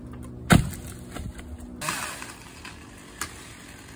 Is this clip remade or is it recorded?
recorded